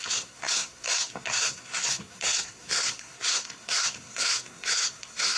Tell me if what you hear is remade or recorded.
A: remade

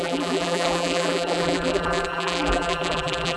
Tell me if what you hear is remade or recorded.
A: remade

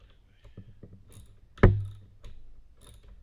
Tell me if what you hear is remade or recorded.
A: recorded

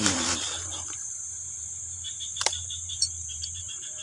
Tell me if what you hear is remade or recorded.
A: remade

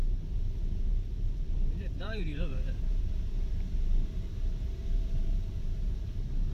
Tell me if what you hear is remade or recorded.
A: remade